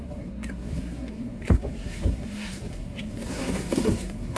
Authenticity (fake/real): fake